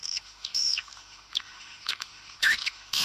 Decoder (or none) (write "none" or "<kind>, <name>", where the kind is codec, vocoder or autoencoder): autoencoder, DAC-VAE